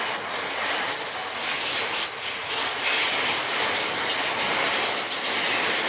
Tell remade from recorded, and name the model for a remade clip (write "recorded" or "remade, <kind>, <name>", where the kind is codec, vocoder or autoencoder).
recorded